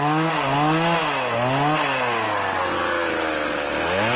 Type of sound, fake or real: real